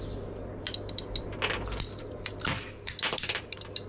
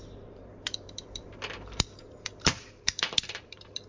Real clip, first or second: first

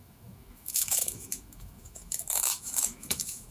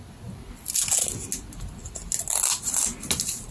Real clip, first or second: second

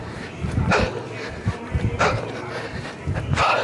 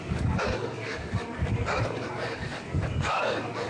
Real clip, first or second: first